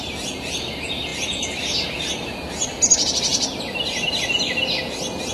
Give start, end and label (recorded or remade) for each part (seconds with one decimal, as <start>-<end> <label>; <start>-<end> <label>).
0.0-5.3 recorded